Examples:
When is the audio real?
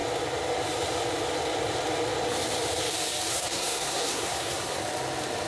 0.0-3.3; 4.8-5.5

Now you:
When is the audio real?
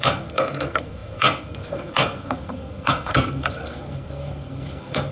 none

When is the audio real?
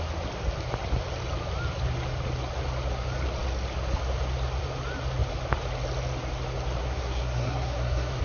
0.0-6.8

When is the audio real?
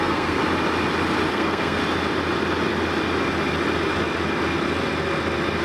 0.4-1.3; 1.8-5.6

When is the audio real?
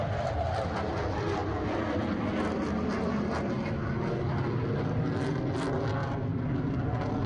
0.0-7.3